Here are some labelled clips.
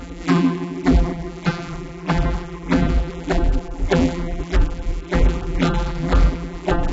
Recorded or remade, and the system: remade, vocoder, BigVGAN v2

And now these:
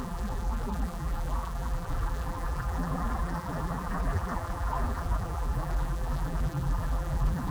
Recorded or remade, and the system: remade, vocoder, BigVGAN v2